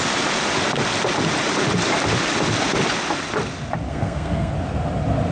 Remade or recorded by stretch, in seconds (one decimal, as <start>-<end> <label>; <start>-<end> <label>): 0.0-3.9 recorded; 3.9-4.5 remade; 4.5-5.3 recorded